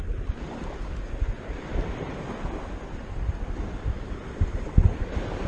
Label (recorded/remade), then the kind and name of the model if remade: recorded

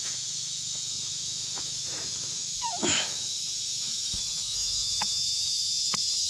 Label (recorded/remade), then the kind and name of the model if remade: remade, autoencoder, DAC-VAE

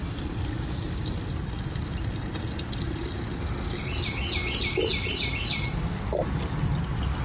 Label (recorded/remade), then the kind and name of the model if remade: recorded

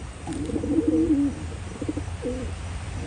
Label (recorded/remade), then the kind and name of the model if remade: recorded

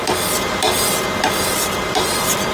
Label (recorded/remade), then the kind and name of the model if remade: recorded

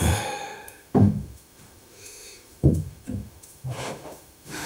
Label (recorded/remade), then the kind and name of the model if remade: remade, autoencoder, DAC-VAE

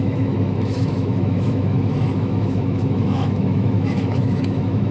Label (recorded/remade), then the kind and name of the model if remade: remade, autoencoder, DAC-VAE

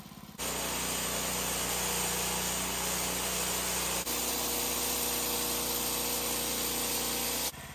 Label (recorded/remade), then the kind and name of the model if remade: recorded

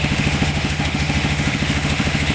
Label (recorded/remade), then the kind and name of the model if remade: remade, autoencoder, DAC-VAE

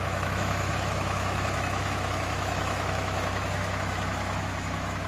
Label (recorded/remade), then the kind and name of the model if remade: remade, autoencoder, DAC-VAE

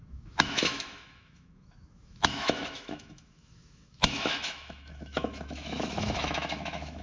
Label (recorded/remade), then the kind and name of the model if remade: remade, autoencoder, DAC-VAE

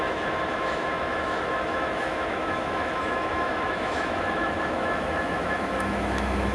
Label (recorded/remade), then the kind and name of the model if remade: remade, autoencoder, DAC-VAE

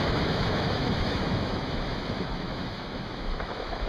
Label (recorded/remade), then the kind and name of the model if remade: remade, autoencoder, DAC-VAE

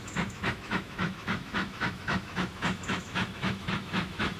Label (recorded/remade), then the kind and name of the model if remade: remade, autoencoder, DAC-VAE